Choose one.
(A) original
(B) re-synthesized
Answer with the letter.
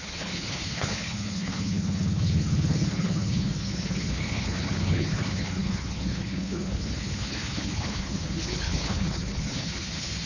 B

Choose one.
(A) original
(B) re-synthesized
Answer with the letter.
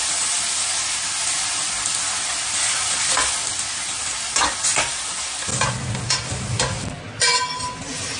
A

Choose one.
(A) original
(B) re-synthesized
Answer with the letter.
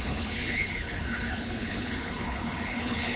B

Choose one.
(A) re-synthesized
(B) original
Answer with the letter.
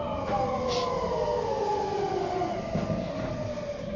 B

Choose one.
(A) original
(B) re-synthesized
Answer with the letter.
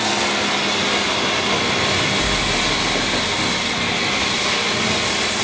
A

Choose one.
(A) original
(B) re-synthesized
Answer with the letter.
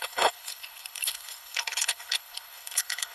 B